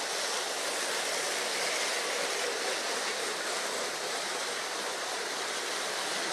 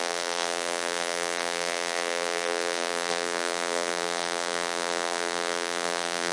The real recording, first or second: first